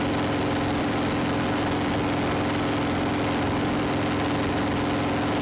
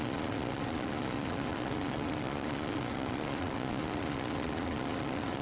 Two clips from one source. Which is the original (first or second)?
first